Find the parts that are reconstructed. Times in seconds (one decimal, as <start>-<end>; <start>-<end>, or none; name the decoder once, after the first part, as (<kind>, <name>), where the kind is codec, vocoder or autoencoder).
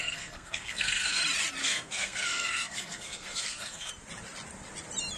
0.0-1.2 (codec, SNAC); 1.6-3.9